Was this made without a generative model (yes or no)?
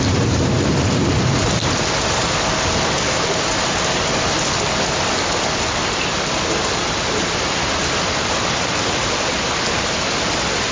yes